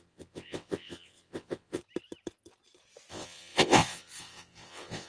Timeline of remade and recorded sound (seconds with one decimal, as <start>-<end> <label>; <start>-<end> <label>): 0.0-1.8 remade; 1.8-3.1 recorded; 3.1-5.1 remade